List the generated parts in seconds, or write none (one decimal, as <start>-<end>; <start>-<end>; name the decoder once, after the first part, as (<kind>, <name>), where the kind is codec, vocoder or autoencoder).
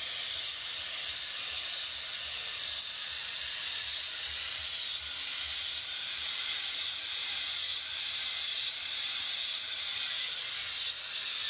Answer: 3.2-4.6 (vocoder, BigVGAN v2); 5.6-10.4